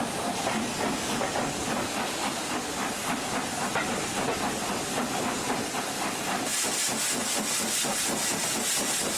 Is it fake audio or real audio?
real